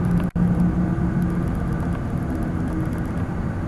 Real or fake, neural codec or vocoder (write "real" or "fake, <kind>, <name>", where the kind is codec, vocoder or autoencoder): real